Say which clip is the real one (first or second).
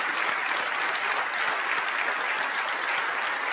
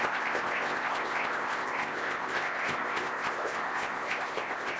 first